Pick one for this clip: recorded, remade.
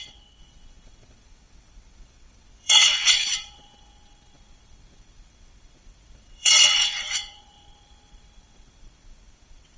remade